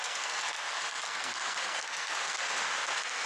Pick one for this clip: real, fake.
fake